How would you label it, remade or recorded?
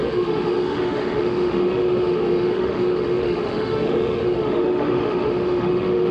remade